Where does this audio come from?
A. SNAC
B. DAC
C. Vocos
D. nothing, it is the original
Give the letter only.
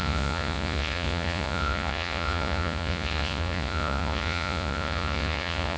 C